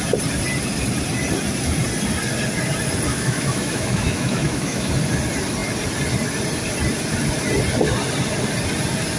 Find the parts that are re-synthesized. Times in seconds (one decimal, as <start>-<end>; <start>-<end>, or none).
3.1-4.9